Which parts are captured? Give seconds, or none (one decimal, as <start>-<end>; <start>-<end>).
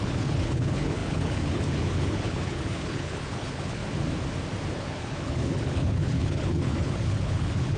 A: 3.8-4.8